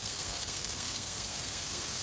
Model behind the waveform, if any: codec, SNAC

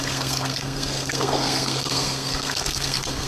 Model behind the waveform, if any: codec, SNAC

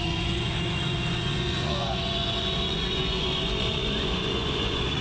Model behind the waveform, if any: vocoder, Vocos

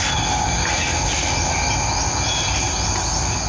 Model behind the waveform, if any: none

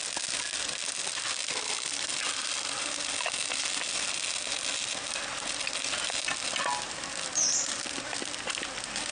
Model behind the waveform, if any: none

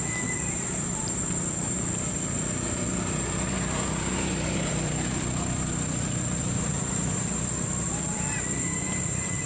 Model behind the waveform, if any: vocoder, BigVGAN v2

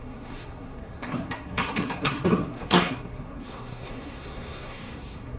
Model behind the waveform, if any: codec, SNAC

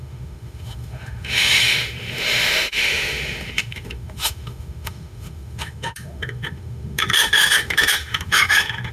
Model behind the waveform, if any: autoencoder, DAC-VAE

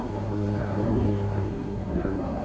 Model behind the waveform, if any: codec, SNAC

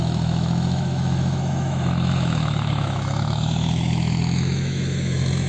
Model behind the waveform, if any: autoencoder, DAC-VAE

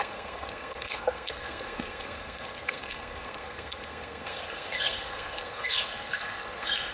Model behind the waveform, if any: codec, SNAC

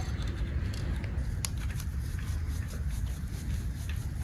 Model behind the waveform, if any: none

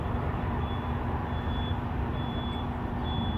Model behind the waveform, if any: none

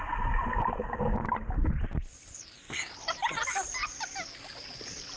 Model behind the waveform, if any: none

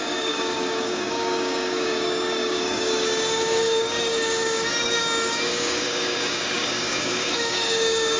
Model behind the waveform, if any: codec, DAC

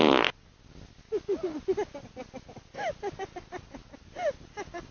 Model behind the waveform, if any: none